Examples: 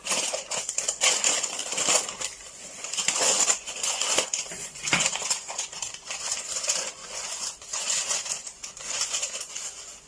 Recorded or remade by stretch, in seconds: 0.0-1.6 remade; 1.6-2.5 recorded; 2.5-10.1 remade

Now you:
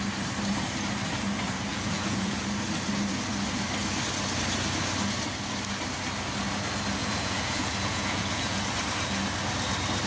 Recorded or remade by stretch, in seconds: 0.0-1.7 recorded; 1.7-2.3 remade; 2.3-7.0 recorded; 7.0-8.6 remade; 8.6-10.1 recorded